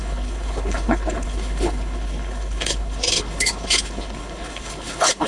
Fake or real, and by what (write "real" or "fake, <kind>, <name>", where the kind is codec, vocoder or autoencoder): fake, codec, HILCodec